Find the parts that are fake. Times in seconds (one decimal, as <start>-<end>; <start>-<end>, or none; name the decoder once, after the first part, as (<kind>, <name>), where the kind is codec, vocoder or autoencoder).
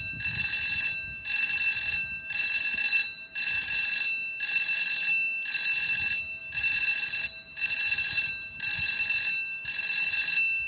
none